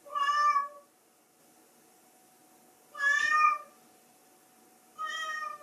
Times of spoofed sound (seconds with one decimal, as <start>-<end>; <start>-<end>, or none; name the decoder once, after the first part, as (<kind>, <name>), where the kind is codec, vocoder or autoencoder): none

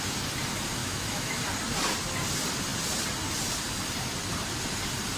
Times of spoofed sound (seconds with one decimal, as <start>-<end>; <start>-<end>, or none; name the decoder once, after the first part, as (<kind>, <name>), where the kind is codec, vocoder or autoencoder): 0.8-1.4 (autoencoder, DAC-VAE)

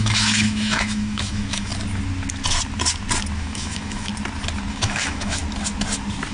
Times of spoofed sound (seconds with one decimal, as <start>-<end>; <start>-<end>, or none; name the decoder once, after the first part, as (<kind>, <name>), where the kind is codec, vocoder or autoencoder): 0.0-1.7 (autoencoder, DAC-VAE); 3.4-4.1; 4.7-5.4

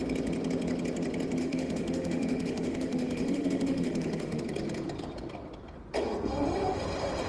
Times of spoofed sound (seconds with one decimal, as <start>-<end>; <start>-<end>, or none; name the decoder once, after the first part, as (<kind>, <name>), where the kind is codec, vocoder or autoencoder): 1.4-4.4 (autoencoder, DAC-VAE)

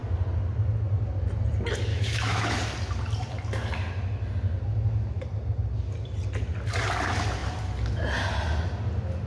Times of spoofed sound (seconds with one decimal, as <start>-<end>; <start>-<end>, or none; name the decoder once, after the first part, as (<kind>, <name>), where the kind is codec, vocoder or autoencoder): 1.9-2.6 (autoencoder, DAC-VAE)